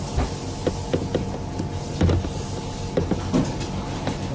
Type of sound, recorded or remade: recorded